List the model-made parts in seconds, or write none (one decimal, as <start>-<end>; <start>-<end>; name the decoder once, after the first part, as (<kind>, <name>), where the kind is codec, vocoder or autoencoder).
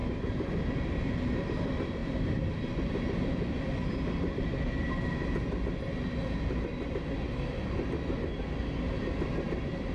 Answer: 2.0-2.6 (vocoder, BigVGAN v2)